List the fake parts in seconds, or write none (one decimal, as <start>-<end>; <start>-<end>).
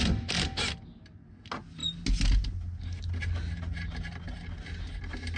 none